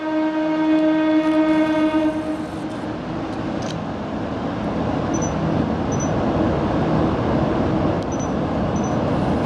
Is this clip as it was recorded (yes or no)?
yes